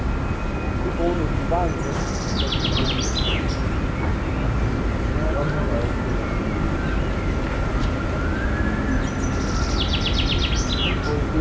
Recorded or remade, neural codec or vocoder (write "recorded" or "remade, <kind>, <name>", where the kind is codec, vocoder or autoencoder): recorded